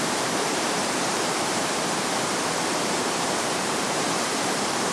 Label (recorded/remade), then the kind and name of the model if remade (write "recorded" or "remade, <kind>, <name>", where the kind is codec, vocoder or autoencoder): remade, vocoder, BigVGAN v2